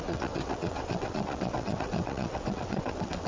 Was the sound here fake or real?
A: fake